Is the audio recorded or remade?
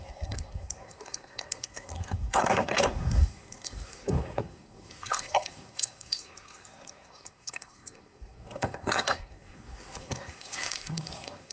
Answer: remade